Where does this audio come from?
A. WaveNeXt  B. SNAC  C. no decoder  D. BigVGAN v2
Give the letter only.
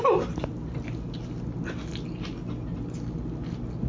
C